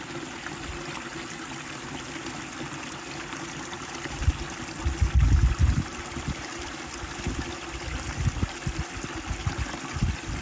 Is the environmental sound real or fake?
real